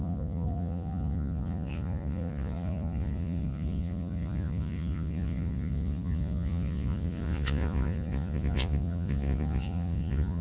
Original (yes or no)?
no